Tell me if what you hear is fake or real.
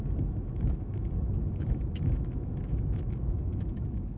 fake